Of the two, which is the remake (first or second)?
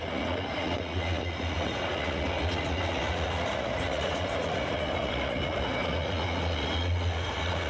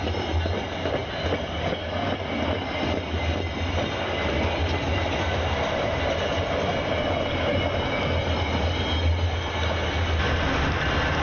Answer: first